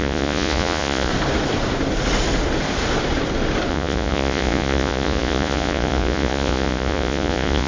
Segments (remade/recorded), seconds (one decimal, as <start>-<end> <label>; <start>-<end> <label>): 0.0-1.1 remade; 1.1-3.7 recorded; 3.7-7.7 remade